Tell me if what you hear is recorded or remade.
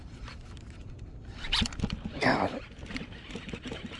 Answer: remade